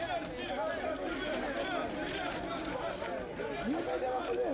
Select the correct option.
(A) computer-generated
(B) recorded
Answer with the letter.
B